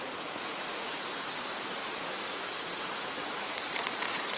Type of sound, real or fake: fake